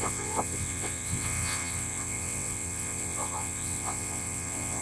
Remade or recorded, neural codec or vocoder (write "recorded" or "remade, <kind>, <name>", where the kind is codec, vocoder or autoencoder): remade, vocoder, WaveNeXt